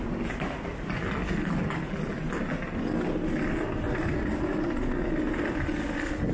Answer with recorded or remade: recorded